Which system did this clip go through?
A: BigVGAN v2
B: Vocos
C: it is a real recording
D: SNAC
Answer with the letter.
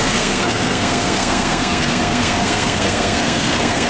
D